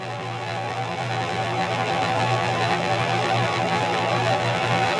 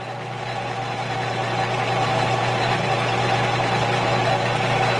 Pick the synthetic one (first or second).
first